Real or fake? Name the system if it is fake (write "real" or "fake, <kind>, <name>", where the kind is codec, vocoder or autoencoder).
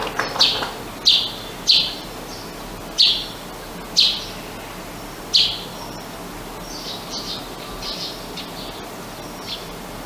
real